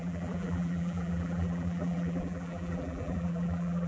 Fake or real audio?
fake